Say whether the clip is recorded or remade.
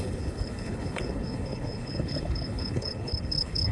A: remade